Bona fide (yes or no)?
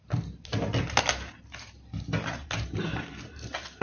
yes